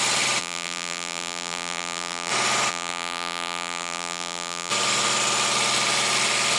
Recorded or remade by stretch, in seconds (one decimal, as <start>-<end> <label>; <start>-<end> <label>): 0.0-0.4 recorded; 0.4-2.3 remade; 2.3-2.7 recorded; 2.7-4.7 remade; 4.7-6.6 recorded